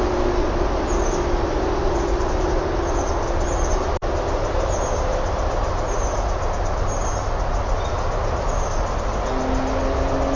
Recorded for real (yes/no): yes